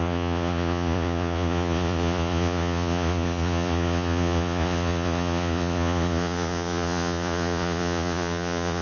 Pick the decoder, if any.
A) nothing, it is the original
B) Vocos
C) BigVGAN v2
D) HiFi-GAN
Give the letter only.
B